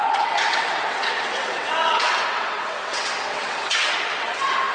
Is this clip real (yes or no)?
no